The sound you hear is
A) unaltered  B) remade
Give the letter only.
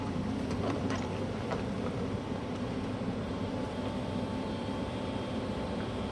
B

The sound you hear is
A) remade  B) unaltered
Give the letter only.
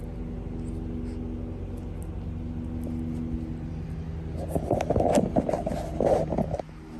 B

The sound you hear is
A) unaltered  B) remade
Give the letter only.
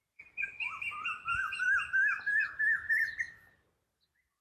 A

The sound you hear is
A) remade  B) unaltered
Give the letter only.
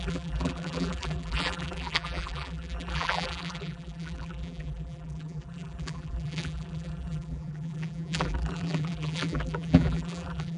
A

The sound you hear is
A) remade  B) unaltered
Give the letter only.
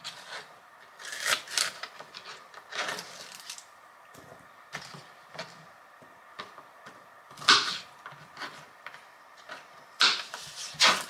A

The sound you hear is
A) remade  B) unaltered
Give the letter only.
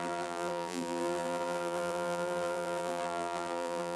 A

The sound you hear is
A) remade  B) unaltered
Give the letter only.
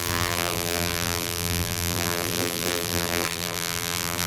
A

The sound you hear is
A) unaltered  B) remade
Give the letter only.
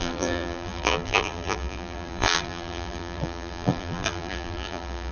B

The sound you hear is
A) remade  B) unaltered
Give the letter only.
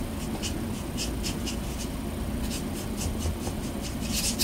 B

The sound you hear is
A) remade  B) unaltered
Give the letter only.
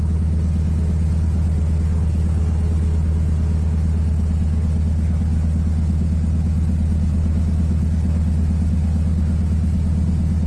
B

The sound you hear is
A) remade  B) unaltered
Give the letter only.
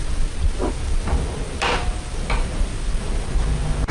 B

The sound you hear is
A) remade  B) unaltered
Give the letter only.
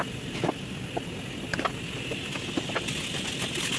B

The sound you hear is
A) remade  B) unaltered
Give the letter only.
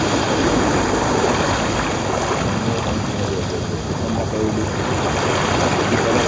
B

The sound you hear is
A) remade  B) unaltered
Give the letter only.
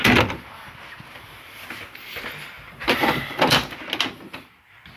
B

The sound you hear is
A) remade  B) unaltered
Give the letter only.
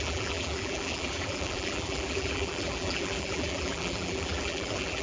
A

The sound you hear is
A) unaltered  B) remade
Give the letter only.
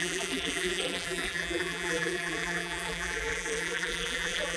B